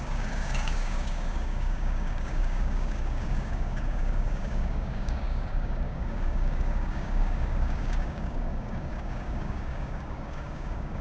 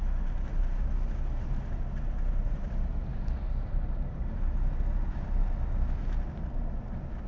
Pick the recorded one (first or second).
second